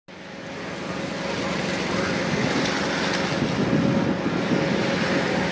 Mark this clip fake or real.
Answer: real